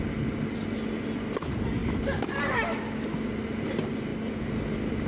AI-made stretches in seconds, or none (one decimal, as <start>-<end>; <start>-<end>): none